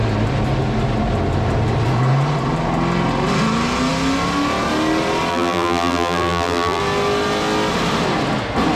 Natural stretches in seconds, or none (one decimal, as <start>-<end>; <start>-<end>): 0.0-5.3; 6.8-8.8